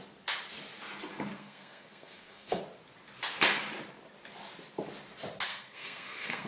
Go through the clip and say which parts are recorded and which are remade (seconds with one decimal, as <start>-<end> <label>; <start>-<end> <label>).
0.0-1.3 recorded; 1.3-2.6 remade; 2.6-5.5 recorded; 5.5-6.5 remade

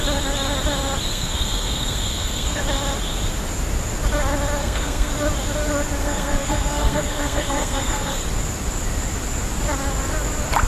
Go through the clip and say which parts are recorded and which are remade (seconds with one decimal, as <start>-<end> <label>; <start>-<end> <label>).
0.0-1.1 recorded; 1.1-2.6 remade; 2.6-4.6 recorded; 4.6-5.1 remade; 5.1-6.0 recorded; 6.0-8.2 remade; 8.2-10.7 recorded

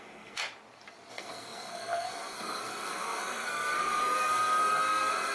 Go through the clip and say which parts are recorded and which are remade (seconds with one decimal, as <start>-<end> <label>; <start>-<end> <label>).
0.0-0.4 remade; 0.4-1.1 recorded; 1.1-5.3 remade

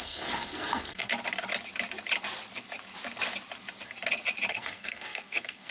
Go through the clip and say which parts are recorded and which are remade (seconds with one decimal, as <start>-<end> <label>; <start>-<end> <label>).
0.0-1.1 remade; 1.1-4.5 recorded; 4.5-5.7 remade

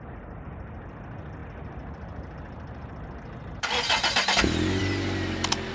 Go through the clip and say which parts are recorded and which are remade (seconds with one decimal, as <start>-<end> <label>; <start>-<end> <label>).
0.0-5.7 recorded

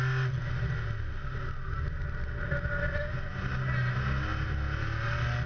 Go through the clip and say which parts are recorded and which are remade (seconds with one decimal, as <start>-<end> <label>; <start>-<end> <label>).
0.0-5.5 recorded